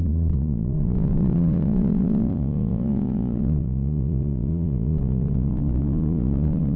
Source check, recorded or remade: remade